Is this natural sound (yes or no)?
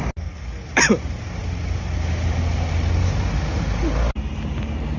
yes